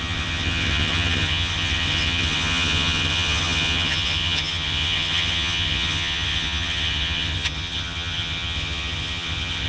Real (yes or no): no